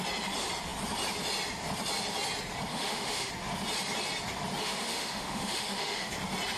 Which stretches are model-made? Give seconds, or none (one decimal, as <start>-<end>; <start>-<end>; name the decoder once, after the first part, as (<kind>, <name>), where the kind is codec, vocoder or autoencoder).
2.7-3.3 (autoencoder, DAC-VAE); 4.6-6.1

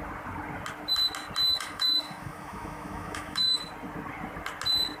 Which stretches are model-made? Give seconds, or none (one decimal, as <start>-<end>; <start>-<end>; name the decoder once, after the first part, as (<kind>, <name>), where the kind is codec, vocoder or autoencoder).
1.5-3.6 (autoencoder, DAC-VAE)

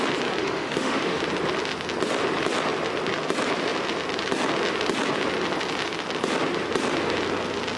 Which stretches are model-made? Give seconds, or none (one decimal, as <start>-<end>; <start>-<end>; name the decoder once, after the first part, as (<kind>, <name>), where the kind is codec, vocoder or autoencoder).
0.4-1.2 (autoencoder, DAC-VAE)

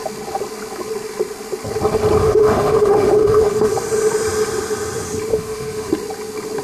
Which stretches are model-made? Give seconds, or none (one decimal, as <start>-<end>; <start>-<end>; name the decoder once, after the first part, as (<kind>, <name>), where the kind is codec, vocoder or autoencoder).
2.2-3.7 (autoencoder, DAC-VAE); 5.3-5.9

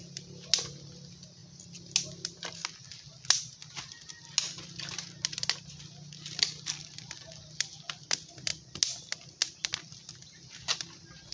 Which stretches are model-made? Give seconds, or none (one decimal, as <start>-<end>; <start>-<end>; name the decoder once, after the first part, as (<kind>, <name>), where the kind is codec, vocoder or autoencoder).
none

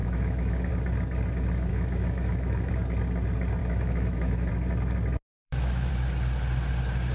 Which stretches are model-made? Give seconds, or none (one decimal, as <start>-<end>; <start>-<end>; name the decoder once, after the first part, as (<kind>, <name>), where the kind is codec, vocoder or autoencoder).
0.0-0.7 (autoencoder, DAC-VAE); 1.7-2.7; 3.6-4.5; 5.3-5.9

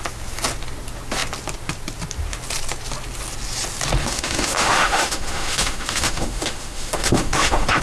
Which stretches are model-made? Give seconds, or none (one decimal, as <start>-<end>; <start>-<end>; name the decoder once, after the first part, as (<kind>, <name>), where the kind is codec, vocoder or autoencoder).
4.0-7.8 (autoencoder, DAC-VAE)